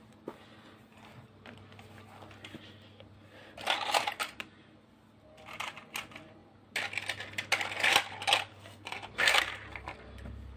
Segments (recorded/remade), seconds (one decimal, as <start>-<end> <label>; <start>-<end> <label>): 0.0-8.5 recorded; 8.5-9.4 remade; 9.4-10.6 recorded